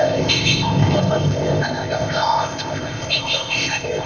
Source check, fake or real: fake